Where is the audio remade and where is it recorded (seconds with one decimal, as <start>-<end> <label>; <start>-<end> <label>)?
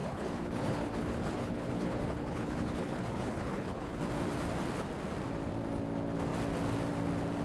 0.0-4.0 remade; 4.0-7.4 recorded